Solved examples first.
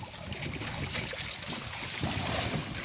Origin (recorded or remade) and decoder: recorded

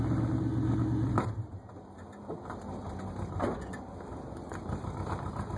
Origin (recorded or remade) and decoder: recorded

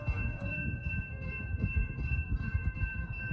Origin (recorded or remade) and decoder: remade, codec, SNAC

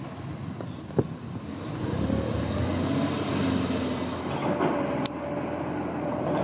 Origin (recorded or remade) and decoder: recorded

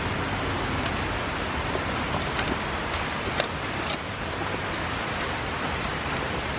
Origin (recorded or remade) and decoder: recorded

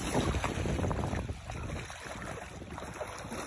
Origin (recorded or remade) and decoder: recorded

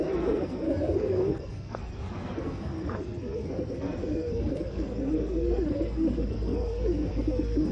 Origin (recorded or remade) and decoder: remade, codec, SNAC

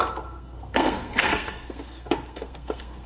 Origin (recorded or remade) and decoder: remade, codec, SNAC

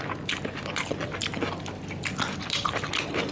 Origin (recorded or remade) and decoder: recorded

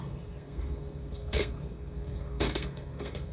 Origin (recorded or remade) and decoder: remade, codec, SNAC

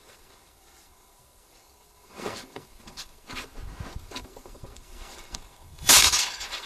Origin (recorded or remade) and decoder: remade, codec, SNAC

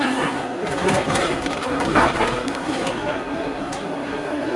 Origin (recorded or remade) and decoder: remade, codec, SNAC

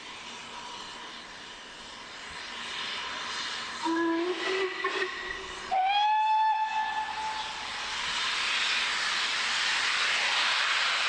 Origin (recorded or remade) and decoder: recorded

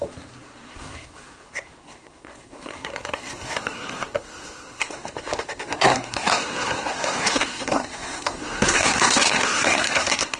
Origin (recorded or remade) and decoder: remade, codec, SNAC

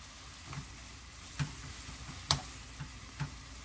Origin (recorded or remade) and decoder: recorded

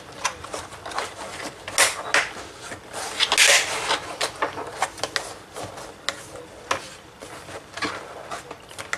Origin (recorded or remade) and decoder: recorded